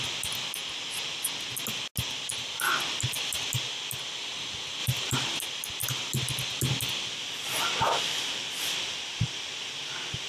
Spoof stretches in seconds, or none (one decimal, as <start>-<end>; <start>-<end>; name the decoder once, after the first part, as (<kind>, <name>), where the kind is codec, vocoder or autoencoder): 4.8-5.4 (vocoder, BigVGAN v2)